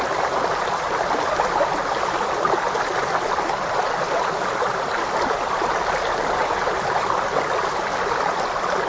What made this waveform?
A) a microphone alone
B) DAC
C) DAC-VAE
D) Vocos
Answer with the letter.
A